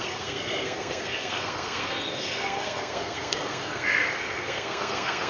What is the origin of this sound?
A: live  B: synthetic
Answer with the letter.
B